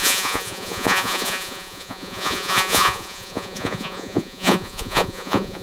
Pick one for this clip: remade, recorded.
remade